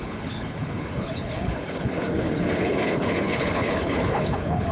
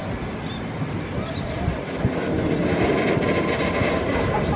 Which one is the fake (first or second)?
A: first